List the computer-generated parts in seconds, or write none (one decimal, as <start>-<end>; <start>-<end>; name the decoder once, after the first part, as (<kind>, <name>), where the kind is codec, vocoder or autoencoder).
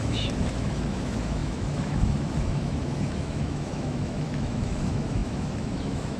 0.0-6.2 (autoencoder, DAC-VAE)